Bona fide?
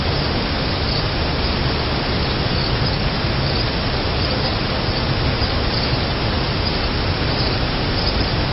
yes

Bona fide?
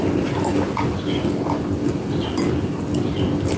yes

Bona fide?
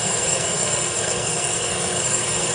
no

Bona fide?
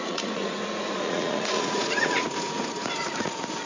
no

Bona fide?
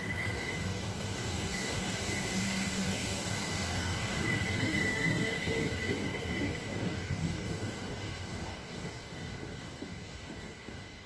no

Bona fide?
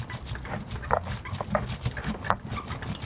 yes